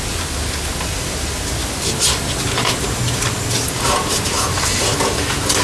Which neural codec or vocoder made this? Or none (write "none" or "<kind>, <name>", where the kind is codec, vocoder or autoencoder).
none